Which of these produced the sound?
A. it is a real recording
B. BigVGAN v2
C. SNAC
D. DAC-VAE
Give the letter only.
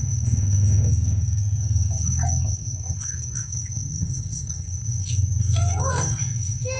C